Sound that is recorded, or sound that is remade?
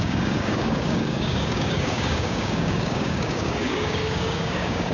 remade